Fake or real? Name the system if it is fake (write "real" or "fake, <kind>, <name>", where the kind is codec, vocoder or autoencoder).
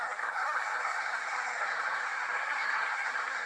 fake, codec, SNAC